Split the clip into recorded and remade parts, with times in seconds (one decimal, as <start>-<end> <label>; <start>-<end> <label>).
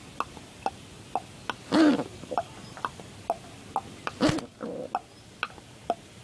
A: 0.0-2.1 recorded; 2.1-3.1 remade; 3.1-6.2 recorded